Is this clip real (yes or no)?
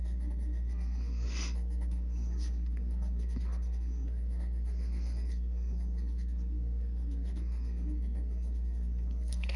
no